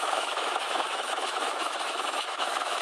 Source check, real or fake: fake